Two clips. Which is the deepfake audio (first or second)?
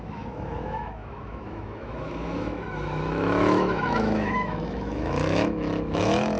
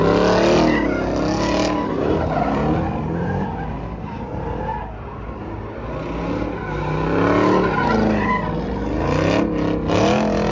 first